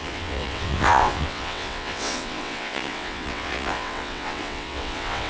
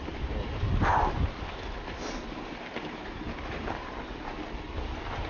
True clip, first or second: second